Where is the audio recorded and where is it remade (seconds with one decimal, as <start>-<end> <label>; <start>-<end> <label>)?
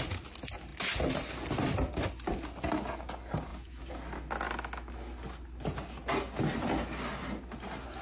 0.0-8.0 recorded